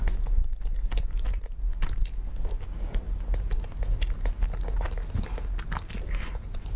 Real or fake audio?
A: real